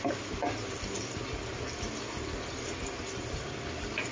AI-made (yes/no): no